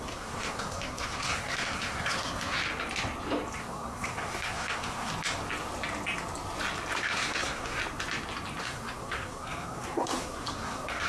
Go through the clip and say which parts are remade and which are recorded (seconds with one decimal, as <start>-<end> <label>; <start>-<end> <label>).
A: 0.0-2.6 remade; 2.6-3.6 recorded; 3.6-5.1 remade; 5.1-7.0 recorded; 7.0-7.8 remade; 7.8-8.6 recorded; 8.6-11.1 remade